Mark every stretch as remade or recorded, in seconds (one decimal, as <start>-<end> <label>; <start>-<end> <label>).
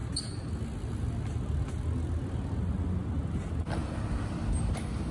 0.0-3.8 recorded; 3.8-5.1 remade